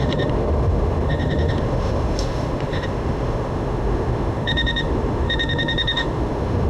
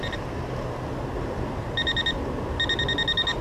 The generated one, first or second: first